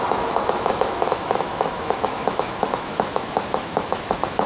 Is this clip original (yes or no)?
no